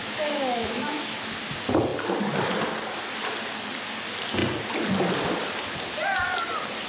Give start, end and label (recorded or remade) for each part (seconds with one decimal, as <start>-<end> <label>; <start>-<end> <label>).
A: 0.0-1.3 remade; 1.3-6.9 recorded